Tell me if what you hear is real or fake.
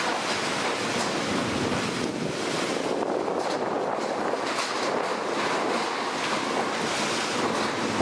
real